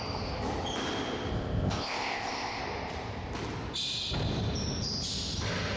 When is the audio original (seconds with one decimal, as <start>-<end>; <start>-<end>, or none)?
0.0-1.3; 2.6-5.8